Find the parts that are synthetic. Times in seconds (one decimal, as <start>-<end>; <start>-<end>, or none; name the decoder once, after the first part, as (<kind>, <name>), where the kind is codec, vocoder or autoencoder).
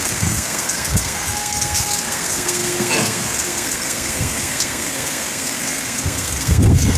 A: 0.0-7.0 (codec, SNAC)